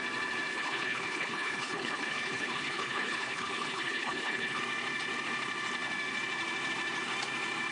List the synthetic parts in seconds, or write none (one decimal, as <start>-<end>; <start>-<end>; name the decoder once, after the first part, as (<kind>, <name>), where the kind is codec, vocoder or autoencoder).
0.5-4.6 (codec, HILCodec)